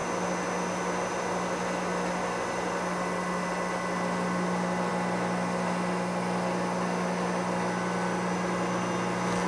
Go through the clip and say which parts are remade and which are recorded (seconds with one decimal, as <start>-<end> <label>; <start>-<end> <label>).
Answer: 0.0-9.5 recorded